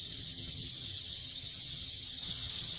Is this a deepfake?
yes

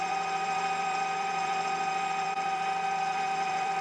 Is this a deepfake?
yes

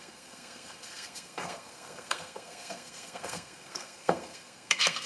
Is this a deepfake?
yes